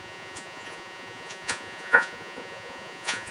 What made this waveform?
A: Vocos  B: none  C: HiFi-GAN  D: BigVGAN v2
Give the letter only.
A